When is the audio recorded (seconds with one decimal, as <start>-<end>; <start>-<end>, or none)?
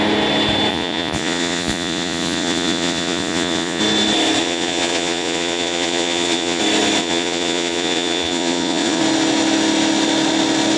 0.0-0.7; 3.8-4.4; 6.6-7.0; 9.0-10.8